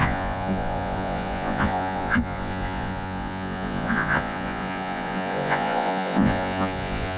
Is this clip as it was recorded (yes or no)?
no